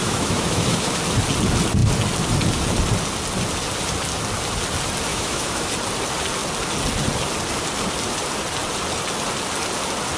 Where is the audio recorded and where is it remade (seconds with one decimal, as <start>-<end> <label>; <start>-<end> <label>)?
0.0-1.0 remade; 1.0-5.1 recorded; 5.1-5.7 remade; 5.7-10.2 recorded